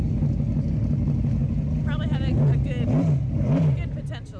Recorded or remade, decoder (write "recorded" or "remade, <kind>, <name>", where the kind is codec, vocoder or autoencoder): recorded